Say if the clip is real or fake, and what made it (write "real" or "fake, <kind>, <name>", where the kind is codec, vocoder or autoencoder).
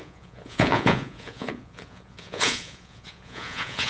fake, vocoder, Vocos